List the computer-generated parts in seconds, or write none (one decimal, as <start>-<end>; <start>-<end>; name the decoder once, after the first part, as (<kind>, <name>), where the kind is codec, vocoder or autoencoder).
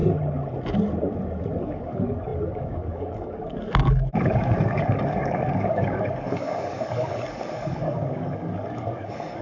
1.6-9.4 (codec, DAC)